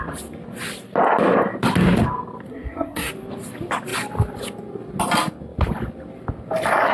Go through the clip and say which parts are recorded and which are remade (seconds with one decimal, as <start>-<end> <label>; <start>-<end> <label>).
0.0-2.5 recorded; 2.5-3.1 remade; 3.1-6.9 recorded